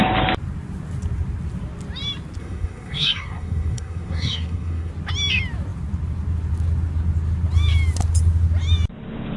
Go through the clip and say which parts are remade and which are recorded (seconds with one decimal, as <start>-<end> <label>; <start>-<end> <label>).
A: 0.0-2.4 recorded; 2.4-4.9 remade; 4.9-9.4 recorded